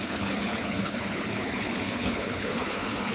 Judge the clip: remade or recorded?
remade